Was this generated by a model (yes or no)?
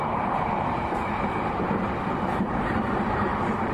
yes